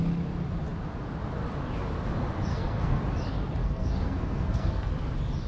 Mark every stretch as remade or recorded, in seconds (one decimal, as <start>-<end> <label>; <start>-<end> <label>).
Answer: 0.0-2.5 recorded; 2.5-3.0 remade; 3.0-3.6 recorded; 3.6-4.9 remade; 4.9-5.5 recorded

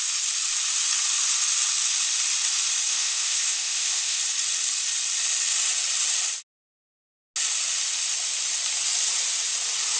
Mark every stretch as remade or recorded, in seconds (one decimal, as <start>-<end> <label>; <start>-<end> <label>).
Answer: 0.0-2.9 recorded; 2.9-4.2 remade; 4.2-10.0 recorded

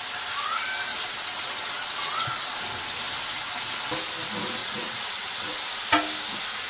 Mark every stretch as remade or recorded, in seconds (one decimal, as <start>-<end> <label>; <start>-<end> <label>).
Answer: 0.0-0.9 recorded; 0.9-2.3 remade; 2.3-4.6 recorded; 4.6-5.6 remade; 5.6-6.7 recorded

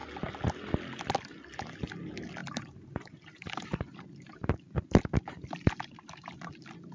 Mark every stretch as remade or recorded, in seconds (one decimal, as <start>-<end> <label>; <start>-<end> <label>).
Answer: 0.0-2.4 recorded; 2.4-6.5 remade; 6.5-6.9 recorded

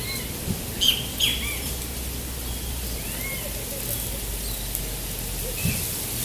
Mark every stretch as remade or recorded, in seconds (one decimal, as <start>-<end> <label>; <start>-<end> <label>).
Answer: 0.0-6.2 recorded

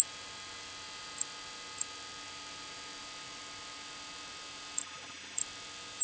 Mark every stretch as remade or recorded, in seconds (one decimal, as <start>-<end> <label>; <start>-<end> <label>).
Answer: 0.0-4.8 recorded; 4.8-5.4 remade; 5.4-6.0 recorded

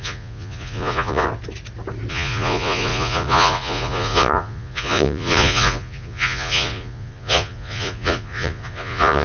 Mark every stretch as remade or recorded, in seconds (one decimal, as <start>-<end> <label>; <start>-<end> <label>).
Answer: 0.0-1.3 remade; 1.3-2.1 recorded; 2.1-9.2 remade

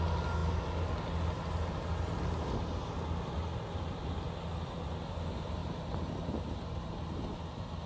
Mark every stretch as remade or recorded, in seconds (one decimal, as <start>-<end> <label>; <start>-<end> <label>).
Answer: 0.0-7.9 recorded